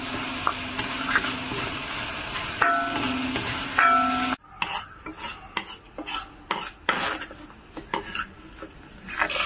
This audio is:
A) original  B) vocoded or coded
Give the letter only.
A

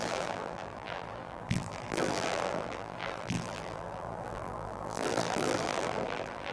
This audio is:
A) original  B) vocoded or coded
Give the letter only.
B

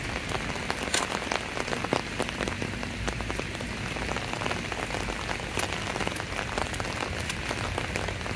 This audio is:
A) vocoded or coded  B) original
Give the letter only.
B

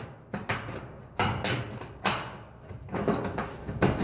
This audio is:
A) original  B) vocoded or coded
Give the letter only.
A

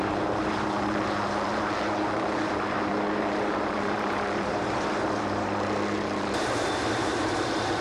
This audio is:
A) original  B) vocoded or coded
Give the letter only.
B